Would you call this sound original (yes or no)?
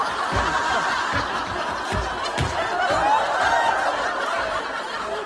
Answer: yes